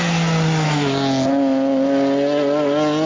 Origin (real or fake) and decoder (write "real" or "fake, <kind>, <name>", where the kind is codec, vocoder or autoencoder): real